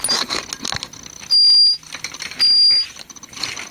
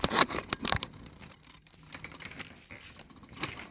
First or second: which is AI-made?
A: second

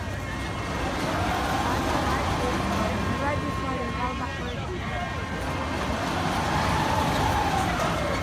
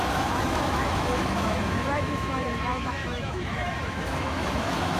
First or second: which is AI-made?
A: second